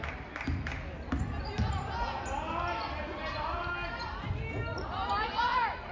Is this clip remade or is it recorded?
recorded